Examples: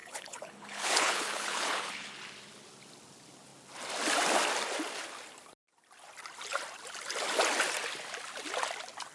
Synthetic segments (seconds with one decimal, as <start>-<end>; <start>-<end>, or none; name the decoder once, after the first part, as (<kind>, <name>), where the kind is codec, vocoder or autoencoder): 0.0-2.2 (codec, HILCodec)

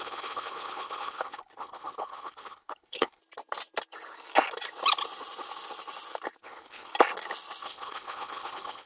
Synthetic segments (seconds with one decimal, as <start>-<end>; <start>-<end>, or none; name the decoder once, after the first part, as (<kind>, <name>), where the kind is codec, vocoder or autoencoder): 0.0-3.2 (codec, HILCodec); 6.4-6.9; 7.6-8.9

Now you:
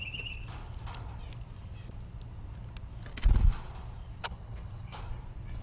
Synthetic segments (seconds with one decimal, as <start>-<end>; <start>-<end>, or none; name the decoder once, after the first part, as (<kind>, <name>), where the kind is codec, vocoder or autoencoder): 4.2-5.0 (codec, HILCodec)

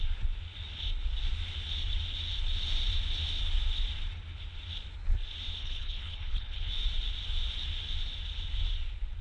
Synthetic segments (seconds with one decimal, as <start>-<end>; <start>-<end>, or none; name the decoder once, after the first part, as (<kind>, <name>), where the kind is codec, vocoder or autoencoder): 5.6-6.7 (codec, HILCodec)

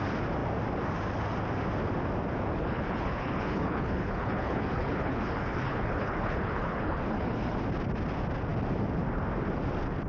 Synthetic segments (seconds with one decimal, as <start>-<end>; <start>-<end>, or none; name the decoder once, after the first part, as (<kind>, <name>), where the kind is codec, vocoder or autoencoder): 2.5-7.6 (codec, HILCodec)

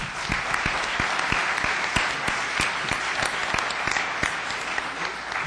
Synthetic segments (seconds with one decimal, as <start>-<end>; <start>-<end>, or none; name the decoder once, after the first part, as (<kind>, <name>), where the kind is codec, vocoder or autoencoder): none

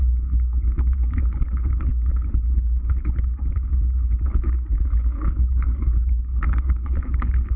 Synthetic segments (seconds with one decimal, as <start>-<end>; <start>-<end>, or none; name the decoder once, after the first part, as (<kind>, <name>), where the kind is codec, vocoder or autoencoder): 0.0-7.6 (codec, HILCodec)